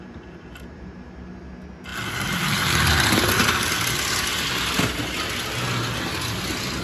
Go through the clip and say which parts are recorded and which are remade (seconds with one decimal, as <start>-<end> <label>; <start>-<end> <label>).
0.0-1.5 remade; 1.5-6.8 recorded